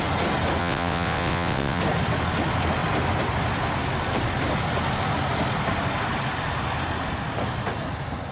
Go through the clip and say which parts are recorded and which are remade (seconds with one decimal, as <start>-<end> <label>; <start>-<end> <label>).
0.0-0.6 recorded; 0.6-1.8 remade; 1.8-8.3 recorded